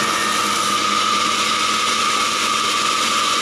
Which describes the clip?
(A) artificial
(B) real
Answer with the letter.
A